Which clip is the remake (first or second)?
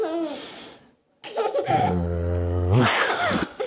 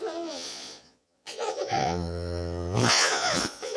second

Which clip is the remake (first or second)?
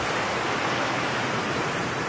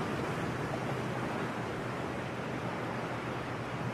first